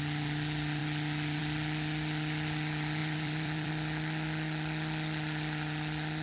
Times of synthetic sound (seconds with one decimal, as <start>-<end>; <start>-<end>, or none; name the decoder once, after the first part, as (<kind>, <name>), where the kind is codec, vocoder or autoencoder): 3.0-3.7 (vocoder, BigVGAN v2)